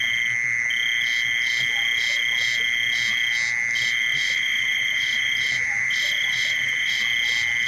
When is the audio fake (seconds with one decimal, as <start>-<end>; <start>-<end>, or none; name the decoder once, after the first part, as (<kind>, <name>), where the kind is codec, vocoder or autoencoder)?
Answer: 4.1-7.0 (vocoder, BigVGAN v2)